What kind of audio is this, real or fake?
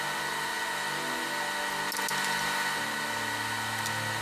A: real